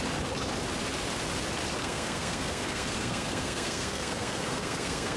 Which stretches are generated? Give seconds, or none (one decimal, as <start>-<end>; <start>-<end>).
1.8-5.2